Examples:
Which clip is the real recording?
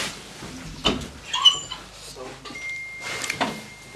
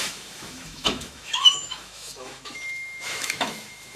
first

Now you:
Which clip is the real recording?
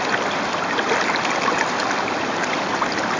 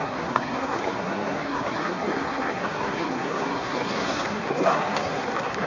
first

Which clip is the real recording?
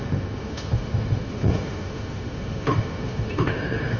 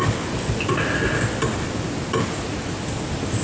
second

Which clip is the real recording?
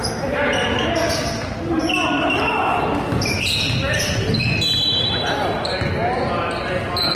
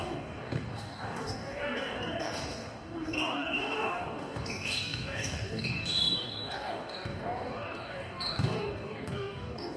first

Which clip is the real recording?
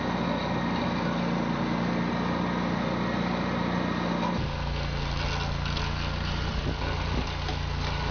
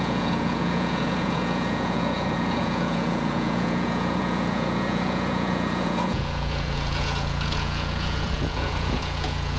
first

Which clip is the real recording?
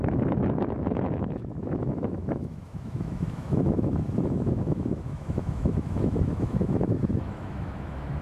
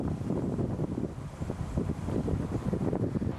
second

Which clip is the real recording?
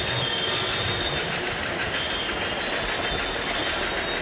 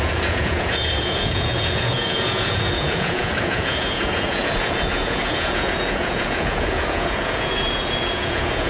first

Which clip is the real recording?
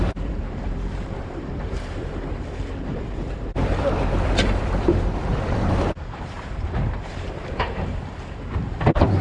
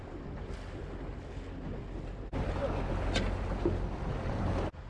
second